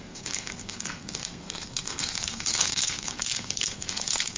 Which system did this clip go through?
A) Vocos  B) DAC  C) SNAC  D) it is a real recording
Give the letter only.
C